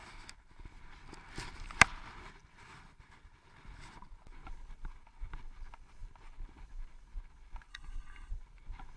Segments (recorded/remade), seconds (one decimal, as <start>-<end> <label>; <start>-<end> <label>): 0.0-7.7 recorded; 7.7-8.3 remade; 8.3-9.0 recorded